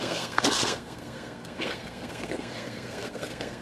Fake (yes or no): yes